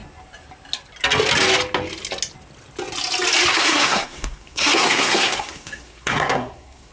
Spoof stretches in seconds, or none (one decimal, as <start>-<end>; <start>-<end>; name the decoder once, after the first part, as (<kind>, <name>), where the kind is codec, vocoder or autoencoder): 3.5-6.9 (codec, SNAC)